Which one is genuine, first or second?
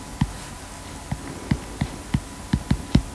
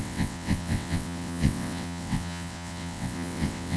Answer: first